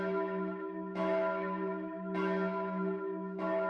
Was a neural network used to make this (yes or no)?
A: yes